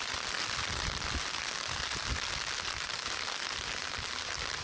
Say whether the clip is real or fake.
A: real